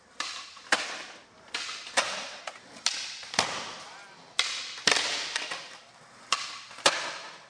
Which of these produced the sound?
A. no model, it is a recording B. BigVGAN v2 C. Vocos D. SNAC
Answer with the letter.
A